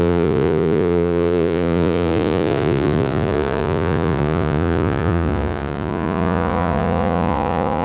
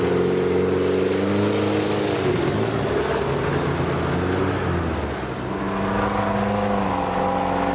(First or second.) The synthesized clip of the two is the first